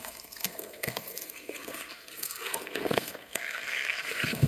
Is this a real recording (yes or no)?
no